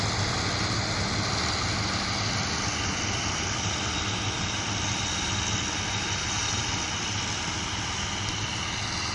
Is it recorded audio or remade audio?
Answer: recorded